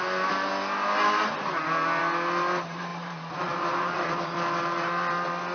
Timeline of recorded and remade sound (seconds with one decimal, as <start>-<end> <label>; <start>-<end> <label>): 0.0-2.9 recorded; 2.9-4.2 remade; 4.2-5.5 recorded